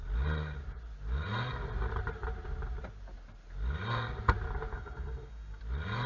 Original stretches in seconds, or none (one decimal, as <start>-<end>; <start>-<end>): 0.0-4.7; 5.6-6.1